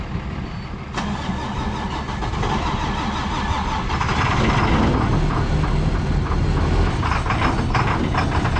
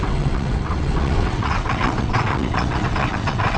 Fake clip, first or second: second